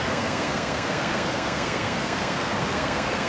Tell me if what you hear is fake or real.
fake